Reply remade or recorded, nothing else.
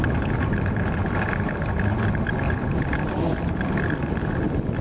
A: recorded